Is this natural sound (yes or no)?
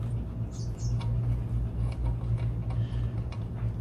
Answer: yes